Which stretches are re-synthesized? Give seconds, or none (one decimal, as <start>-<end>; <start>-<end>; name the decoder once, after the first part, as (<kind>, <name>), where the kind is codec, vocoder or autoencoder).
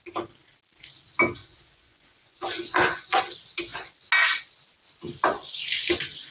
1.4-3.2 (vocoder, Vocos)